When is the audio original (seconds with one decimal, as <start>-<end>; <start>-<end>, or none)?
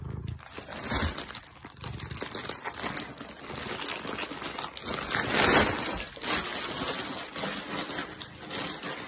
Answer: 0.0-9.1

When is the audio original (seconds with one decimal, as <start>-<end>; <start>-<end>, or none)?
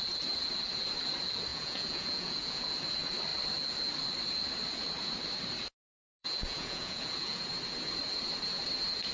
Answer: 0.0-1.5; 2.6-6.2; 7.4-9.1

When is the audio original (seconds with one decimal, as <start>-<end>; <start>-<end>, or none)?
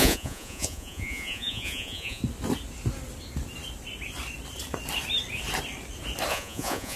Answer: 2.2-6.3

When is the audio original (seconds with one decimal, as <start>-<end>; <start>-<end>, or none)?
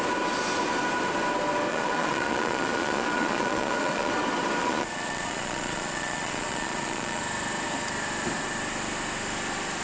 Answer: 0.0-1.7; 4.1-4.6; 7.2-9.8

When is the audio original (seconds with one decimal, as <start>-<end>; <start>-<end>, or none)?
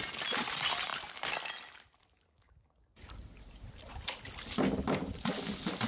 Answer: 0.0-5.9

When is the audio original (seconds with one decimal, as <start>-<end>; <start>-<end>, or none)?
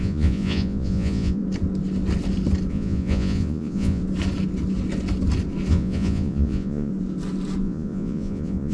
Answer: 1.4-2.7; 4.0-5.7; 6.9-7.6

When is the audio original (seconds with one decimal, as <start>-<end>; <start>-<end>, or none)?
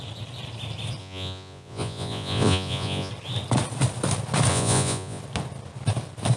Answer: 0.0-1.0; 3.1-4.5; 5.2-6.4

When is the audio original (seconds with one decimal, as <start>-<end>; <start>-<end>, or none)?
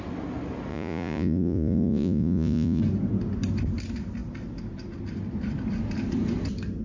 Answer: 0.0-0.7; 2.8-6.8